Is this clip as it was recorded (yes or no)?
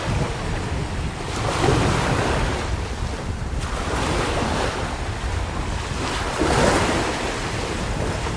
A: yes